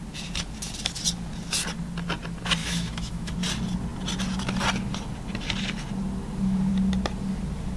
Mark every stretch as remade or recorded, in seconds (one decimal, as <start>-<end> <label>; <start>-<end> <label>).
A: 0.0-2.6 recorded; 2.6-3.3 remade; 3.3-7.8 recorded